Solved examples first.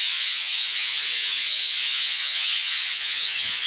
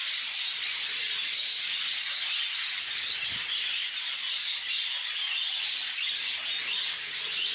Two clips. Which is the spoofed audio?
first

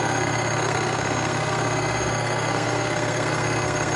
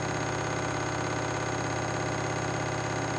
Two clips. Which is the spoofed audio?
first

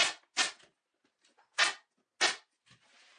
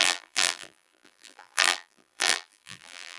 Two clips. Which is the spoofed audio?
second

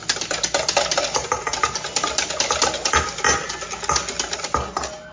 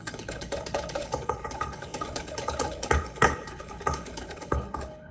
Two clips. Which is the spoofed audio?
second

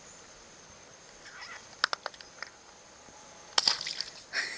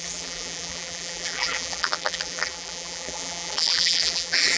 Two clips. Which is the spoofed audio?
second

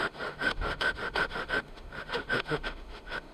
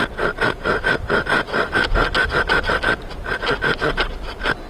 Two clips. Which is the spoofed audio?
first